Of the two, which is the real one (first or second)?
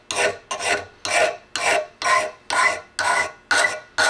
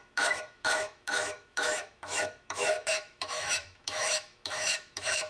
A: first